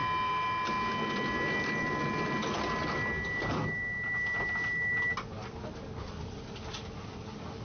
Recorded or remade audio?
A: recorded